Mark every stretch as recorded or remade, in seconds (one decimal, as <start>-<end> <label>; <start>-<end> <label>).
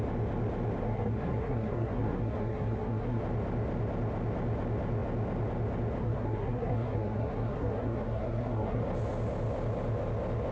0.0-0.8 recorded; 0.8-3.2 remade; 3.2-6.0 recorded; 6.0-8.8 remade; 8.8-10.5 recorded